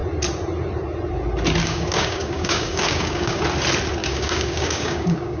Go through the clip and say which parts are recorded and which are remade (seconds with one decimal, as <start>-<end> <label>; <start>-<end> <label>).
0.0-1.6 recorded; 1.6-3.4 remade; 3.4-4.0 recorded; 4.0-5.4 remade